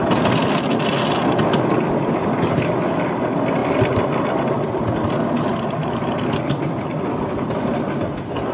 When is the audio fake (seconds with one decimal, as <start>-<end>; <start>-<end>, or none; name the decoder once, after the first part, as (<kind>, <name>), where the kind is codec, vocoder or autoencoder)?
none